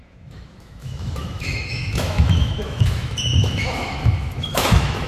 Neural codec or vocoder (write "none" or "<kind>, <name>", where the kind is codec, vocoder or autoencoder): autoencoder, DAC-VAE